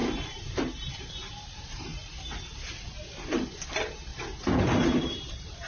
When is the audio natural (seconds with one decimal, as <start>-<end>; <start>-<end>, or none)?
1.1-4.1